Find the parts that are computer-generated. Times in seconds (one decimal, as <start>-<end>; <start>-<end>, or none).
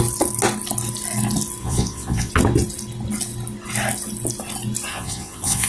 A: 1.6-2.3; 4.9-5.7